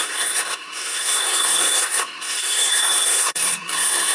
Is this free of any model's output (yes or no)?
no